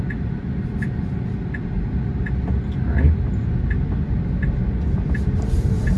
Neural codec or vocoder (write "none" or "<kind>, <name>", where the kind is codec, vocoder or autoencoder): none